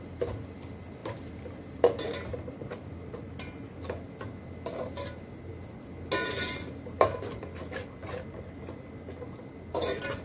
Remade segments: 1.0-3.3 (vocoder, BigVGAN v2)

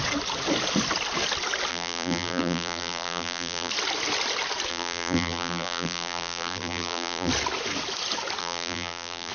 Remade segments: 1.7-3.7 (vocoder, BigVGAN v2); 4.7-7.3; 8.4-9.3

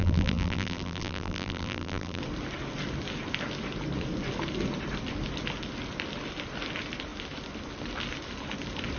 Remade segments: 0.0-2.2 (vocoder, BigVGAN v2)

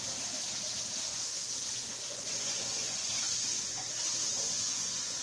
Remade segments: 1.1-3.9 (vocoder, Vocos); 4.3-5.2

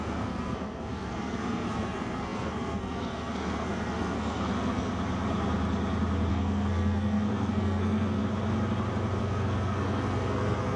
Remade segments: 0.0-4.9 (codec, SNAC); 6.3-8.2; 9.2-10.8

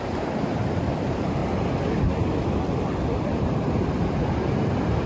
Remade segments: 0.0-1.4 (vocoder, BigVGAN v2); 3.8-5.1

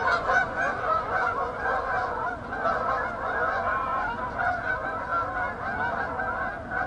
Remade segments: 0.0-5.1 (vocoder, Vocos)